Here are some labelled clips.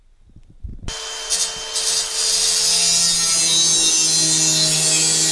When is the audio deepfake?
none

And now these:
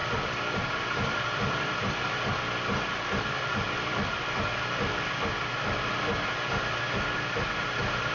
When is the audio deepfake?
0.0-4.2

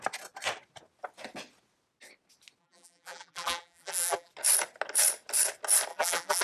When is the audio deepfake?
2.6-4.3; 5.9-6.4